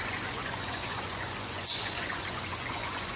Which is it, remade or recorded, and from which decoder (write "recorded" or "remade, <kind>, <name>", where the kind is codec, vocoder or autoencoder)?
remade, vocoder, Vocos